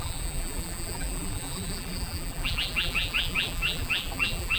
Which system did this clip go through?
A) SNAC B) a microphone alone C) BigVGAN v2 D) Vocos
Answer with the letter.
C